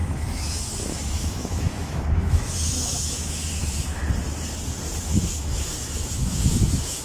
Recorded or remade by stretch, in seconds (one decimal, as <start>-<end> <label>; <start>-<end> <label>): 0.0-4.0 remade; 4.0-5.0 recorded; 5.0-7.0 remade